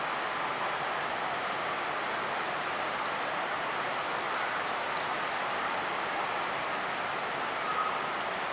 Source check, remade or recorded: recorded